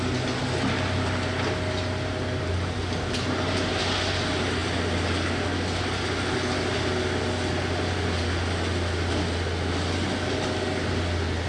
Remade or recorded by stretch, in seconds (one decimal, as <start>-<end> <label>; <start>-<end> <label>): 0.0-11.5 recorded